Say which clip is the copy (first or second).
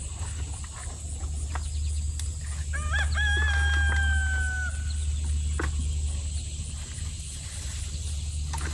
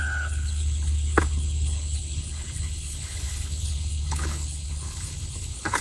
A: second